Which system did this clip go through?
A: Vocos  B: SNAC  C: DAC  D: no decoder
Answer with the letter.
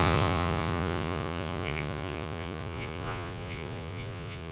A